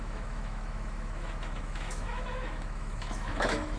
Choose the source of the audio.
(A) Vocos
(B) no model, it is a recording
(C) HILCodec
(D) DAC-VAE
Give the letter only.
D